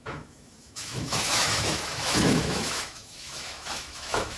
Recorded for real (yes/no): no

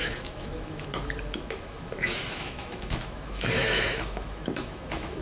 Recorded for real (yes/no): no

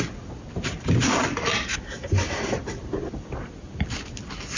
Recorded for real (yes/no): yes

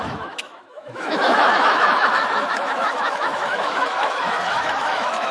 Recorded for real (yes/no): no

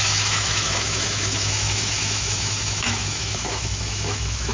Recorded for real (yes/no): no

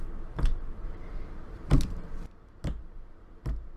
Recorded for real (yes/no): yes